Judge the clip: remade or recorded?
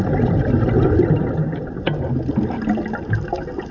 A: recorded